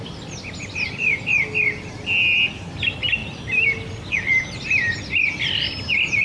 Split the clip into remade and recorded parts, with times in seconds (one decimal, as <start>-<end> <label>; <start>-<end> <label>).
0.0-6.2 recorded